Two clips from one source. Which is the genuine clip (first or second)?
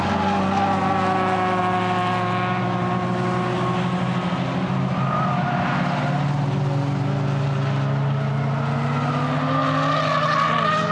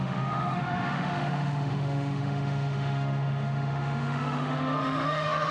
first